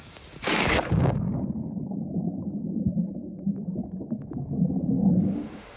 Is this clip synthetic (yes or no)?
yes